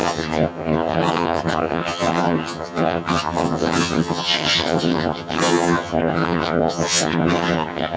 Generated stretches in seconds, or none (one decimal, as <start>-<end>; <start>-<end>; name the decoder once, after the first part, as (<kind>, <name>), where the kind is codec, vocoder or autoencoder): 0.0-8.0 (vocoder, HiFi-GAN)